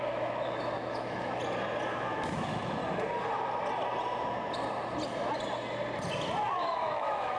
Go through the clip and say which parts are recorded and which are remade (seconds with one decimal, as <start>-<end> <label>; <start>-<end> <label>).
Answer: 0.0-1.4 remade; 1.4-1.9 recorded; 1.9-2.8 remade; 2.8-6.5 recorded; 6.5-7.4 remade